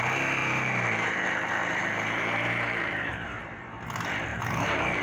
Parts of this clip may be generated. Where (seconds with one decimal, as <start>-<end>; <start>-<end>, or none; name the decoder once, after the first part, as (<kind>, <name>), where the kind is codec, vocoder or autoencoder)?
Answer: 0.4-3.4 (vocoder, BigVGAN v2); 4.3-5.0

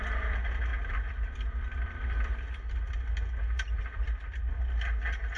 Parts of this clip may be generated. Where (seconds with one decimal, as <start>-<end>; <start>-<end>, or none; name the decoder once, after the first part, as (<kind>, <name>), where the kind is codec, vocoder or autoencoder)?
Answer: none

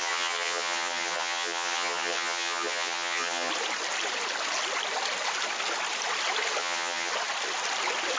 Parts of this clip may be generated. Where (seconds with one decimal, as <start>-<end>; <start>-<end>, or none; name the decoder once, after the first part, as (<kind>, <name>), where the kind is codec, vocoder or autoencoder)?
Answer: 0.0-3.5 (vocoder, HiFi-GAN); 6.6-7.1

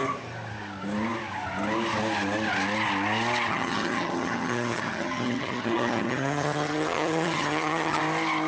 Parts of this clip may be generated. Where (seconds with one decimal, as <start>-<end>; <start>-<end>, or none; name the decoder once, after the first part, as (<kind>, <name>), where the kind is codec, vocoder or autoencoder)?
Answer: 3.5-8.0 (vocoder, HiFi-GAN)

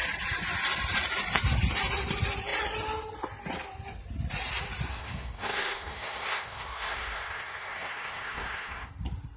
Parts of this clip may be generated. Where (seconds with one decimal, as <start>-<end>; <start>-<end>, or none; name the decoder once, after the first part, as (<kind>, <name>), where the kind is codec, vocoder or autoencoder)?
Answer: 4.9-8.9 (codec, SNAC)